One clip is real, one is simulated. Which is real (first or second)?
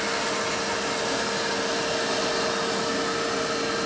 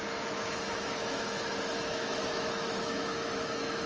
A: first